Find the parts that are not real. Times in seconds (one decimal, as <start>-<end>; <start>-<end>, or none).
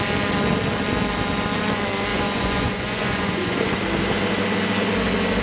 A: 2.1-3.7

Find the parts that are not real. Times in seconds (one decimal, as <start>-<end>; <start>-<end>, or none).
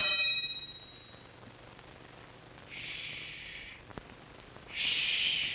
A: none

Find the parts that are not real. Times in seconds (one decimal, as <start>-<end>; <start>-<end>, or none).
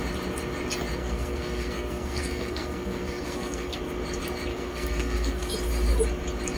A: 1.0-3.8; 4.5-5.5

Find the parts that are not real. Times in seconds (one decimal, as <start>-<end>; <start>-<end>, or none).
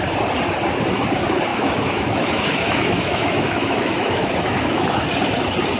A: 1.5-5.0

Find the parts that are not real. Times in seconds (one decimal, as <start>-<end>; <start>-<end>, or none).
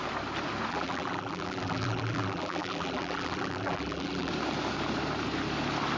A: 0.7-4.3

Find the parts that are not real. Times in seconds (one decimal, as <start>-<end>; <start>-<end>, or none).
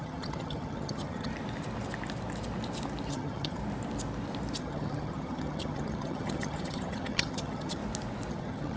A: 0.0-1.3; 3.1-3.6; 4.6-7.8; 8.3-8.8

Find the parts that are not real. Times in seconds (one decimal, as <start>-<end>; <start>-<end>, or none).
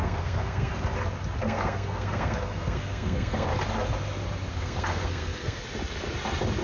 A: 0.0-0.7; 1.4-3.5; 4.5-5.6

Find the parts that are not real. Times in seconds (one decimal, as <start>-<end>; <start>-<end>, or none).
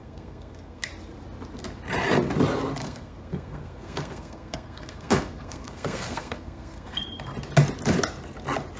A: 0.0-0.9; 2.8-7.0